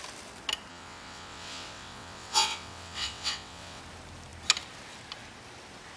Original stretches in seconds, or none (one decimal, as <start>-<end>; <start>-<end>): 0.0-0.7; 3.8-6.0